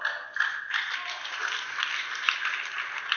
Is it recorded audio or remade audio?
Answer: recorded